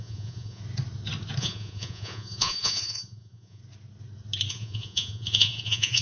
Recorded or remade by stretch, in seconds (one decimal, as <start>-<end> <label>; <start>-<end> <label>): 0.0-0.6 remade; 0.6-1.4 recorded; 1.4-3.6 remade; 3.6-4.5 recorded; 4.5-6.0 remade